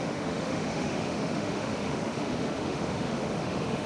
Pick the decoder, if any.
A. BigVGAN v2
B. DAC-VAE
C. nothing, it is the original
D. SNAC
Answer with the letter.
B